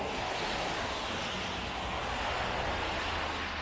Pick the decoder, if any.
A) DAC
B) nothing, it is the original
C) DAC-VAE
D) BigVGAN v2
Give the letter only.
B